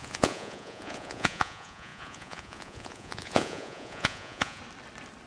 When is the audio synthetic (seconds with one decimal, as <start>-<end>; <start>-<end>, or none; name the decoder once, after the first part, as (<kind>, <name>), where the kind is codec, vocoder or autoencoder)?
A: 0.0-4.6 (vocoder, Vocos)